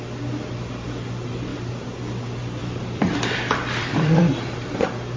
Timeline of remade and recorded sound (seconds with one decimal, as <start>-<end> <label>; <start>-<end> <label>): 0.0-1.5 recorded; 1.5-2.2 remade; 2.2-2.6 recorded; 2.6-4.2 remade; 4.2-5.2 recorded